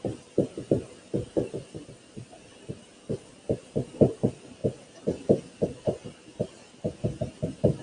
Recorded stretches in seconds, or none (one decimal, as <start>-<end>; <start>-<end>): 0.0-7.8